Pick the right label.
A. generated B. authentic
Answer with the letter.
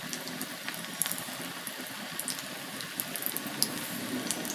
B